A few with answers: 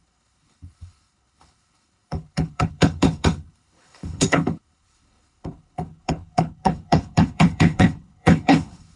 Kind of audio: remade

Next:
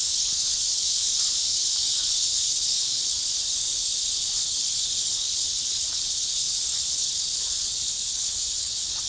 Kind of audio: remade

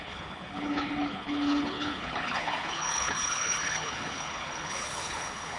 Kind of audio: remade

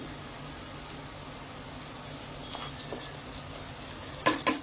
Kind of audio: recorded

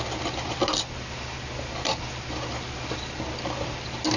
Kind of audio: recorded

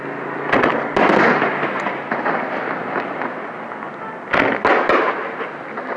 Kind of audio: recorded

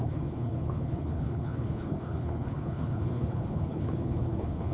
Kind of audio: remade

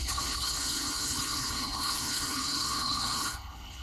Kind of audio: remade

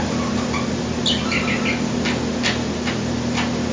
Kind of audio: recorded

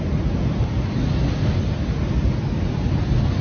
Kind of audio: recorded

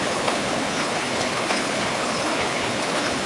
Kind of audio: remade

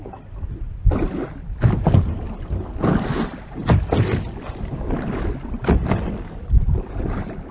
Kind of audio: recorded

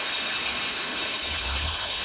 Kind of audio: remade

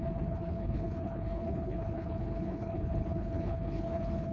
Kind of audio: remade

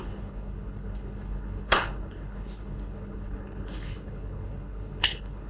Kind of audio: remade